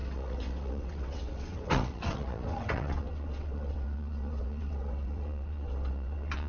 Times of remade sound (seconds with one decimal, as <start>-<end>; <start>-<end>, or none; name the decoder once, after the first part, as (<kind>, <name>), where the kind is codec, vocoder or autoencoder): 0.0-6.5 (vocoder, WaveNeXt)